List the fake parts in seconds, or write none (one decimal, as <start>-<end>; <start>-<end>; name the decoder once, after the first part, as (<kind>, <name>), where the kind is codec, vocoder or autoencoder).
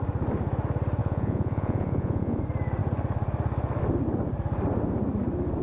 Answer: 1.0-2.4 (vocoder, Vocos)